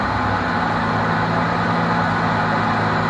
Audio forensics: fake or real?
real